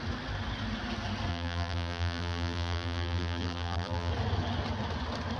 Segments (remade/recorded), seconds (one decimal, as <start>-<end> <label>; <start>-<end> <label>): 0.0-1.3 recorded; 1.3-4.1 remade; 4.1-5.4 recorded